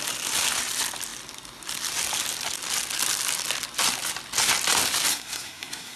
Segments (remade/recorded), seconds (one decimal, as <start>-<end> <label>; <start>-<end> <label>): 0.0-5.1 recorded; 5.1-6.0 remade